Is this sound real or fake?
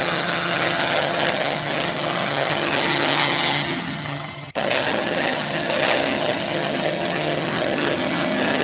fake